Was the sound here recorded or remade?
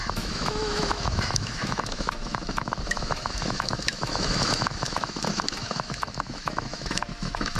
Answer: remade